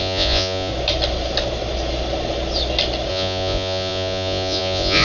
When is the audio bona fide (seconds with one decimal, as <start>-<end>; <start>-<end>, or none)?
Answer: 0.7-3.1